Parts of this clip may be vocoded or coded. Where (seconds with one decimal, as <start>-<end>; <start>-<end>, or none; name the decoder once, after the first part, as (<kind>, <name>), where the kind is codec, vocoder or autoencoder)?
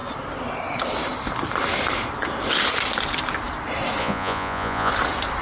4.0-4.9 (vocoder, Vocos)